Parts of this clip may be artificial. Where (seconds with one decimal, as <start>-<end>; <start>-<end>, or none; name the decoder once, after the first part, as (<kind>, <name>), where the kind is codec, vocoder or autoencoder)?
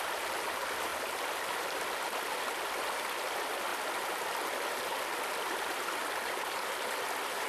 none